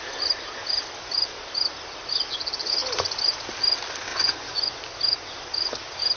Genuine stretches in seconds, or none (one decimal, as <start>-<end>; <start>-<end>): 0.0-4.1; 4.8-6.2